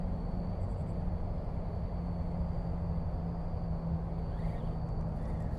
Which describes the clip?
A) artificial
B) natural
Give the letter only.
B